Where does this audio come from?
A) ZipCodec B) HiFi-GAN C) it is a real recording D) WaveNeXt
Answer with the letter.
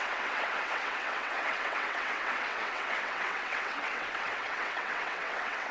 D